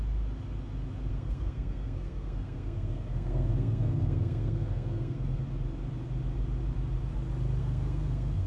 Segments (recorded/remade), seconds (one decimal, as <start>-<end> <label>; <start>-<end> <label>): 0.0-1.1 recorded; 1.1-5.4 remade; 5.4-7.6 recorded; 7.6-8.5 remade